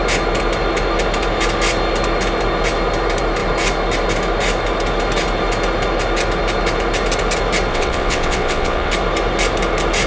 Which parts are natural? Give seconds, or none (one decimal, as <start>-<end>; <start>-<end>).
0.0-7.7; 8.9-10.1